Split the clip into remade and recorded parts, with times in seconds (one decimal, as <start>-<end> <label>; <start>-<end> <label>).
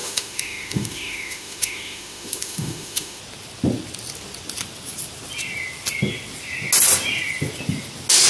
0.0-3.2 remade; 3.2-8.3 recorded